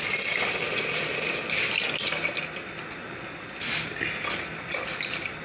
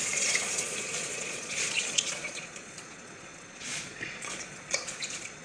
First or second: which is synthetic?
second